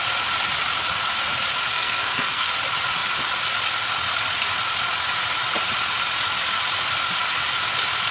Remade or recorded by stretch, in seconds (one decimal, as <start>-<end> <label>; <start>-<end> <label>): 0.0-1.7 recorded; 1.7-2.5 remade; 2.5-8.1 recorded